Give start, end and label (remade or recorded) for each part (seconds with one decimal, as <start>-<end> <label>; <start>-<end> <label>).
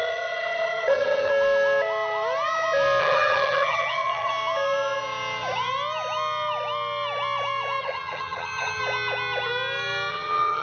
0.0-1.3 remade; 1.3-3.0 recorded; 3.0-4.3 remade; 4.3-7.8 recorded; 7.8-8.8 remade; 8.8-10.1 recorded; 10.1-10.6 remade